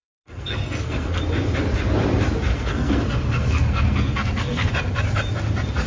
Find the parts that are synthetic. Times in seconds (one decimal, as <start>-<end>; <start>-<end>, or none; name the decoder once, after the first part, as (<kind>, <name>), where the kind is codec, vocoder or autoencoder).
0.0-1.2 (codec, SNAC); 2.5-4.7